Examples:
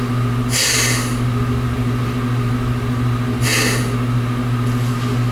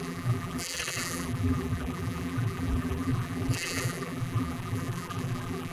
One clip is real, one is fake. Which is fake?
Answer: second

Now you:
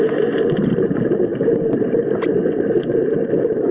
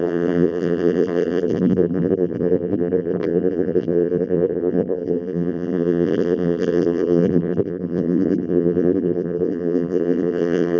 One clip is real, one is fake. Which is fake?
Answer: second